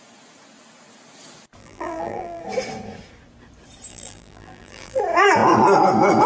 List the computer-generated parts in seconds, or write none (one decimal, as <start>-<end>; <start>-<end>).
1.6-2.4; 3.9-5.0